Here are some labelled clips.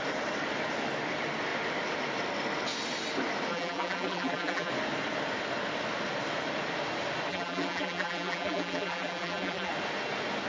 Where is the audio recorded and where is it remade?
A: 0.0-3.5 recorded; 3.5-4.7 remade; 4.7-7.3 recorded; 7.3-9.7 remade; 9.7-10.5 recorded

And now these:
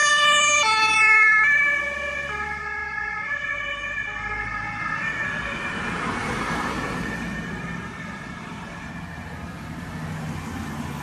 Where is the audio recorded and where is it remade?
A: 0.0-6.2 recorded; 6.2-8.9 remade; 8.9-11.0 recorded

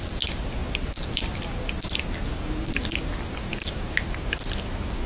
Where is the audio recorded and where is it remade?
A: 0.0-0.6 recorded; 0.6-1.4 remade; 1.4-5.1 recorded